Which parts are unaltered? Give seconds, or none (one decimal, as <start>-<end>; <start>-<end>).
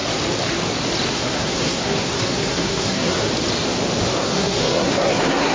0.0-1.1; 3.3-4.2